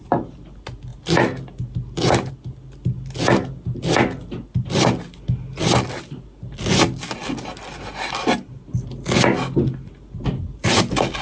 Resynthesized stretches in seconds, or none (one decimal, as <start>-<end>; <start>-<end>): none